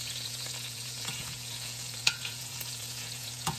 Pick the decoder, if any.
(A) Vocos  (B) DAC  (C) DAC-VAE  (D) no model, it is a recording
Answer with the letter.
A